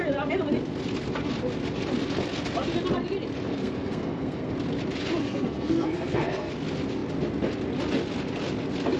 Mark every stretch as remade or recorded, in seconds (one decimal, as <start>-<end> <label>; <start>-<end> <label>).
0.0-3.5 recorded; 3.5-4.5 remade; 4.5-5.2 recorded; 5.2-6.5 remade; 6.5-9.0 recorded